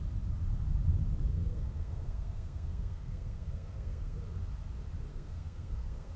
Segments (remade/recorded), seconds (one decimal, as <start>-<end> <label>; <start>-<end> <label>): 0.0-1.3 recorded; 1.3-4.2 remade; 4.2-5.1 recorded; 5.1-6.2 remade